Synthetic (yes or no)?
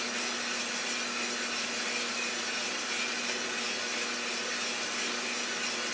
no